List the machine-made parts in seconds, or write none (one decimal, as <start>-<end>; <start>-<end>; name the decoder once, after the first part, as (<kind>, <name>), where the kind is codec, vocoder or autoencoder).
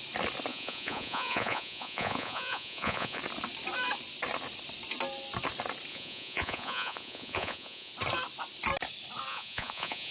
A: 0.5-3.2 (vocoder, Vocos); 5.9-7.9; 9.3-10.1